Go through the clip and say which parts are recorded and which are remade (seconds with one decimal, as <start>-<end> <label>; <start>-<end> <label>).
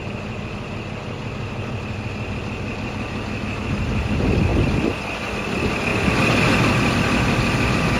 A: 0.0-8.0 recorded